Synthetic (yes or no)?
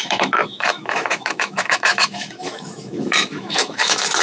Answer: yes